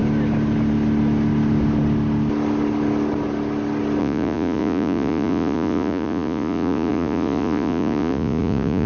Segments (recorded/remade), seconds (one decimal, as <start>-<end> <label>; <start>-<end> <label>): 0.0-4.0 recorded; 4.0-8.9 remade